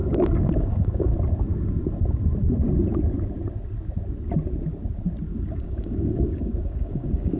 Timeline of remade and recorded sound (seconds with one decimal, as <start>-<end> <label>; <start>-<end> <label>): 0.0-1.1 remade; 1.1-5.5 recorded; 5.5-7.4 remade